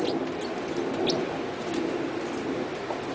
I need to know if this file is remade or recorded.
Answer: recorded